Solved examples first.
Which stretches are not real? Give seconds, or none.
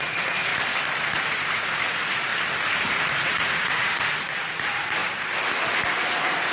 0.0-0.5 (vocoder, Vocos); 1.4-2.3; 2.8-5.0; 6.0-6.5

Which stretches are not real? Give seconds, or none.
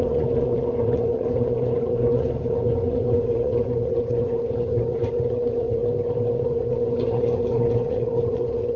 0.0-5.8 (vocoder, Vocos); 6.3-8.8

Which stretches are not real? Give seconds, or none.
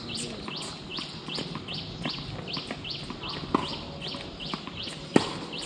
none